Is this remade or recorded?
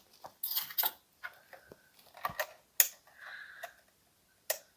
recorded